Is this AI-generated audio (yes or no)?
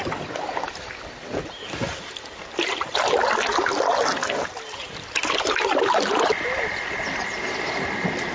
no